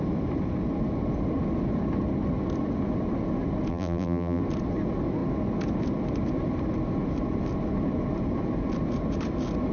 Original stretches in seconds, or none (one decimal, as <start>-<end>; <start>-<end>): 0.0-3.7; 4.4-9.7